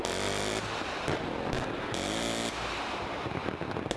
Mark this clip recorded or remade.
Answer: recorded